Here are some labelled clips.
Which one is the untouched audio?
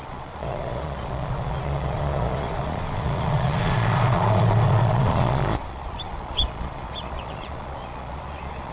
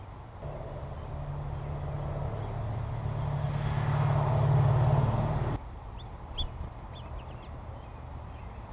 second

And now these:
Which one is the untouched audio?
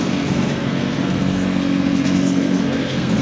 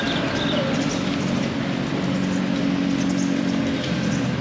second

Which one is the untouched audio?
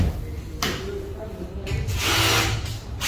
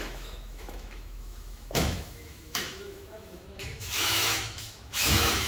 first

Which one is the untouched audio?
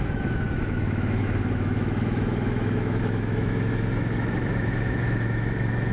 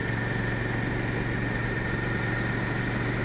second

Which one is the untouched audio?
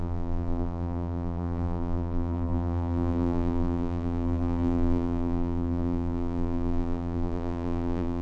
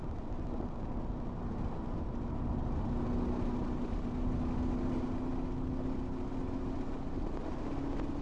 second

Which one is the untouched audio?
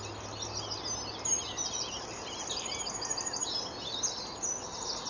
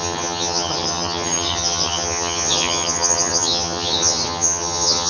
first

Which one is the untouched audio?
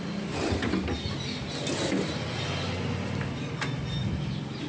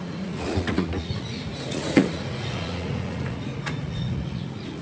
first